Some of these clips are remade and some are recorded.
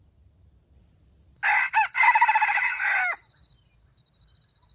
recorded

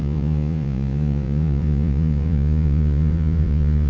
remade